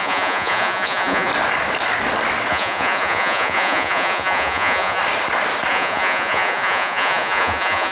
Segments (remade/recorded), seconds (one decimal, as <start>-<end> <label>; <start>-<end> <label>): 0.0-1.3 remade; 1.3-2.5 recorded; 2.5-5.0 remade; 5.0-5.7 recorded; 5.7-7.9 remade